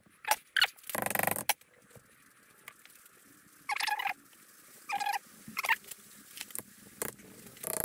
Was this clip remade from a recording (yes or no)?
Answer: no